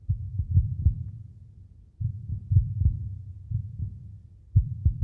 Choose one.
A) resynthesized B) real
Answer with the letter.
B